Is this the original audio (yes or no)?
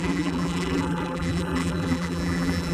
no